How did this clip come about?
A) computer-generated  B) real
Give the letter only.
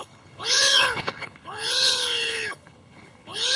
A